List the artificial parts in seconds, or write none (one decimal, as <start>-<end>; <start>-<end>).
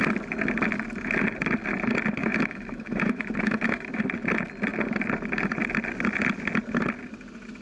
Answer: 2.2-4.0